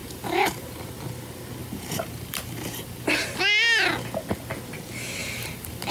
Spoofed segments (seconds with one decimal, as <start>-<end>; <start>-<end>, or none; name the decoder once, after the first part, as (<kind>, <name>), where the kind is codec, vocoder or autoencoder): 0.0-0.9 (vocoder, BigVGAN v2); 1.6-3.4; 5.2-5.9